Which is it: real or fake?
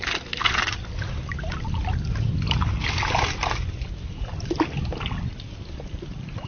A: real